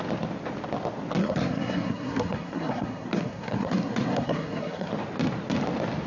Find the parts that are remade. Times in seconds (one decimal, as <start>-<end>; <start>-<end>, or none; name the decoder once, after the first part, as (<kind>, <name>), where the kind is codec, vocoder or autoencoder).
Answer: 1.2-4.9 (codec, SNAC)